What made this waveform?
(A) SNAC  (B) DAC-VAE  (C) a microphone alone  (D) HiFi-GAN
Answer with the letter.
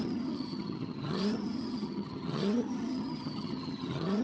D